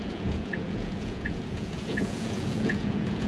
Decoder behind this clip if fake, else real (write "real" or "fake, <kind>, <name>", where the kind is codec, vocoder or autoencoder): fake, vocoder, Vocos